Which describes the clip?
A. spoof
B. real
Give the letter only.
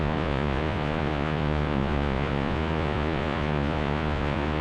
A